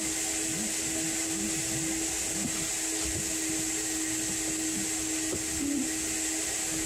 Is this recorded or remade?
recorded